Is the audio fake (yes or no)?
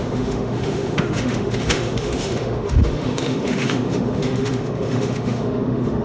yes